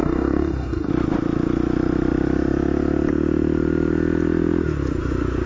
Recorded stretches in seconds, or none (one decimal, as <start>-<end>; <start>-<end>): 0.9-5.5